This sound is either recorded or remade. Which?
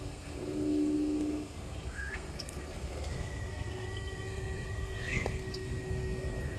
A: remade